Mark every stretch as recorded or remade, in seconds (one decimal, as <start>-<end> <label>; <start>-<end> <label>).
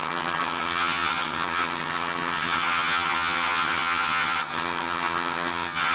0.0-5.9 remade